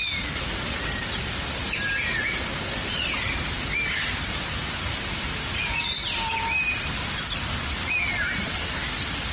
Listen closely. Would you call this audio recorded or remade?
recorded